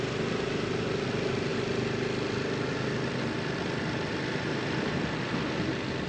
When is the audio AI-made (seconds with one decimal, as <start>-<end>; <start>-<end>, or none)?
none